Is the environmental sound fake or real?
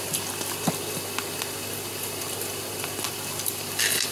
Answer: real